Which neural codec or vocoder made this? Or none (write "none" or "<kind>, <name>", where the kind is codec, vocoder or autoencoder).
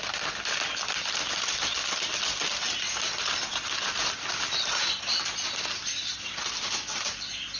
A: none